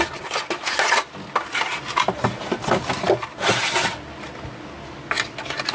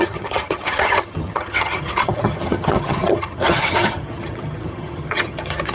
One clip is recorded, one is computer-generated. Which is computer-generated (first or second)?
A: second